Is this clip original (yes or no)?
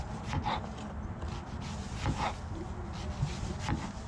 yes